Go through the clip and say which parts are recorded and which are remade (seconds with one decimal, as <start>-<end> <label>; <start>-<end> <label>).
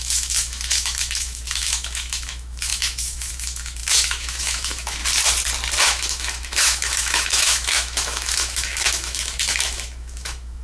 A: 0.0-5.0 remade; 5.0-5.8 recorded; 5.8-10.6 remade